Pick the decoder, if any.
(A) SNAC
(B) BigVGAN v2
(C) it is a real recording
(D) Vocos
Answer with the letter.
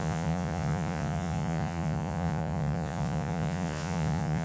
D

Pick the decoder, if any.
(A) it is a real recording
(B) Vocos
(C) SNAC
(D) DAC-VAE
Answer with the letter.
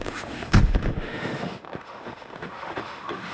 D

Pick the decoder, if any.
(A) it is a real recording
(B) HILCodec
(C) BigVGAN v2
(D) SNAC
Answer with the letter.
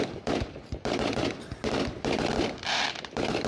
C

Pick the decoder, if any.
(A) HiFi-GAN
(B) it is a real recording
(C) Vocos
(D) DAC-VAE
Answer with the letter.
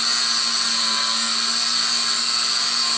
B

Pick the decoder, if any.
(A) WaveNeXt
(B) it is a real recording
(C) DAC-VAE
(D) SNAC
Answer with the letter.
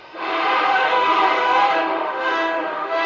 C